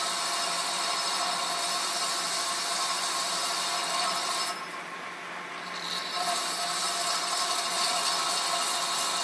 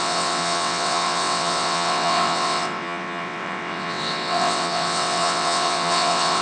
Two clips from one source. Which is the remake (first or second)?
second